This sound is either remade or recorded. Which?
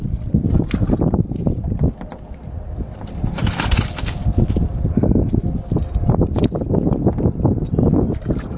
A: recorded